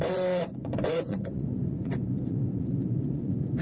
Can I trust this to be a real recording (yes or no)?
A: no